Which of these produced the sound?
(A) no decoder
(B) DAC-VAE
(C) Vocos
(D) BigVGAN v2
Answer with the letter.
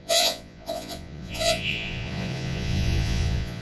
C